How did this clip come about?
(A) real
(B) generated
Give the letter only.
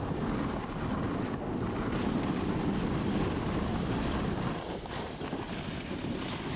A